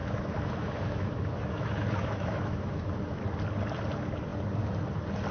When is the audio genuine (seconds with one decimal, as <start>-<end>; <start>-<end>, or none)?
3.2-5.3